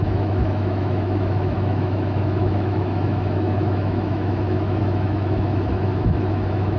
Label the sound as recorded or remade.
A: remade